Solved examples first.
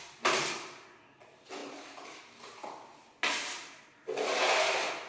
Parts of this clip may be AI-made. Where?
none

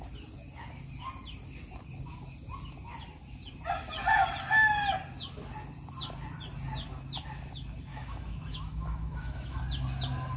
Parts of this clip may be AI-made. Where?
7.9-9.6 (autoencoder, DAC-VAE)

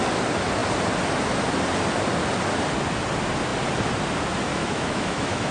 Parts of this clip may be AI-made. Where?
4.5-5.5 (autoencoder, DAC-VAE)

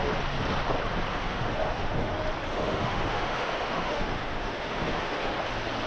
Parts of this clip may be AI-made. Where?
1.1-2.1 (autoencoder, DAC-VAE); 2.5-5.4

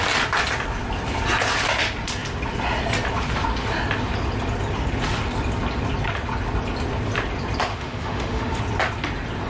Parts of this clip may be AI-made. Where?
7.7-8.6 (autoencoder, DAC-VAE)

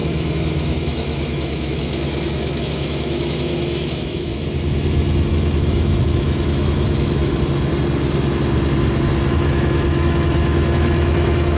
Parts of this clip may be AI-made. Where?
0.0-4.3 (autoencoder, DAC-VAE); 5.3-7.2; 9.3-11.6